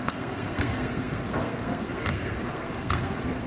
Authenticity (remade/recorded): remade